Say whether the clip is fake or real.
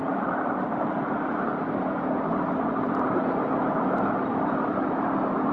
fake